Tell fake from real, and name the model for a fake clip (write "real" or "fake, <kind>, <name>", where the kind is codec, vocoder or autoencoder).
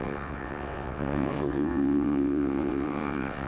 fake, vocoder, WaveNeXt